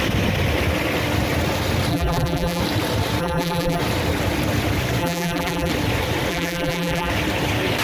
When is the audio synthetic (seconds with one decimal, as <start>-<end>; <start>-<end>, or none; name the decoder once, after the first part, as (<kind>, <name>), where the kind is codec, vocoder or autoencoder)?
1.9-2.6 (vocoder, BigVGAN v2); 3.2-3.8; 5.0-5.7; 6.3-7.1